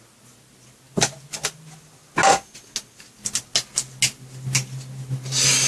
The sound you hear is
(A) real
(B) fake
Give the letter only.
A